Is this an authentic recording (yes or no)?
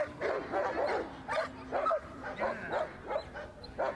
yes